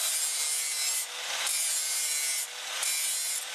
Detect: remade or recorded recorded